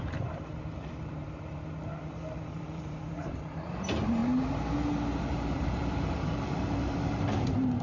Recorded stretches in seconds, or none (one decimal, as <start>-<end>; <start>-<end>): 4.2-5.2